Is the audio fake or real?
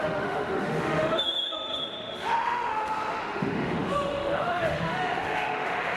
fake